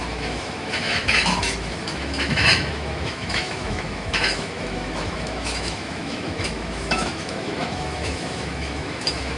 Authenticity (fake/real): fake